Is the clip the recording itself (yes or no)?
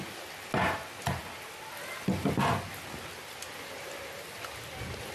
yes